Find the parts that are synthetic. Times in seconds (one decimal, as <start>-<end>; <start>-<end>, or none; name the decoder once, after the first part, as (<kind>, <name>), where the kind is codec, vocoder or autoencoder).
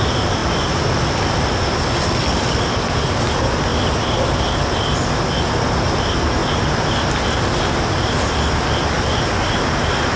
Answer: none